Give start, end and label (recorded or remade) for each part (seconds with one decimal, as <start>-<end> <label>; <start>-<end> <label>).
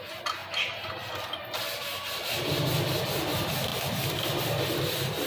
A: 0.0-0.4 recorded; 0.4-1.1 remade; 1.1-5.3 recorded